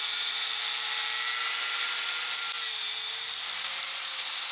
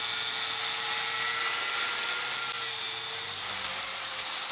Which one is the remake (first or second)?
first